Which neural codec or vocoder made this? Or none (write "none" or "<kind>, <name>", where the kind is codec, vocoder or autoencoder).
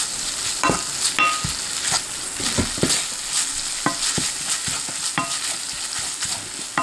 none